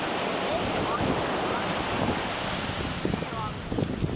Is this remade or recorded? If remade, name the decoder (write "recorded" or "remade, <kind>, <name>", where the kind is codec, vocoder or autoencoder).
recorded